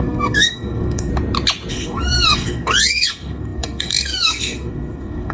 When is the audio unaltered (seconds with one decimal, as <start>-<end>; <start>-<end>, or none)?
1.1-1.7